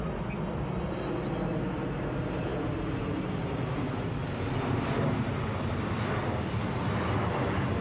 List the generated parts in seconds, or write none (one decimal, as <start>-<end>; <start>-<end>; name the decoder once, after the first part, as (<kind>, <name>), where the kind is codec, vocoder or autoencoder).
none